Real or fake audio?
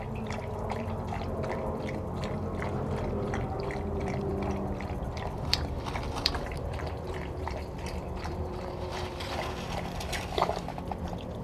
fake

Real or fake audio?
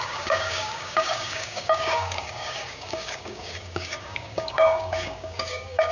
fake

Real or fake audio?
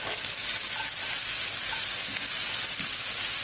real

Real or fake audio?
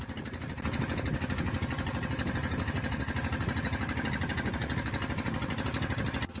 real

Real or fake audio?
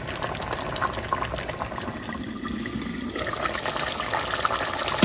real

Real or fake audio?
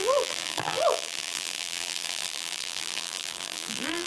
fake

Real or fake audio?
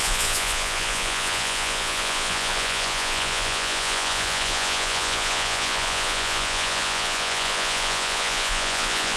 fake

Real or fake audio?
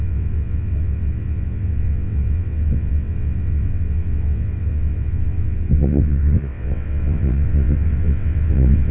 fake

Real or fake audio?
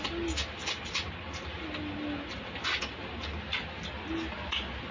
real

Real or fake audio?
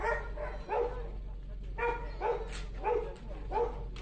real